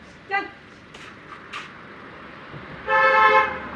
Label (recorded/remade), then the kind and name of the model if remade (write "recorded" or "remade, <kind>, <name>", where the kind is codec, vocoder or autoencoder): remade, vocoder, BigVGAN v2